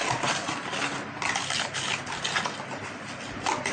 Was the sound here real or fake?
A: real